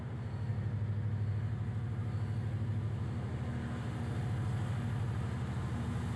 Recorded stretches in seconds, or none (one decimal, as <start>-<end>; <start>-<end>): 0.0-6.2